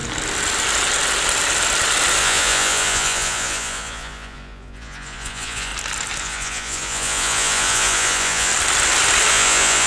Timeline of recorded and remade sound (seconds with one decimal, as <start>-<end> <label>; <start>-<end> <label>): 0.0-2.2 recorded; 2.2-5.7 remade; 5.7-6.2 recorded; 6.2-8.5 remade; 8.5-9.3 recorded; 9.3-9.9 remade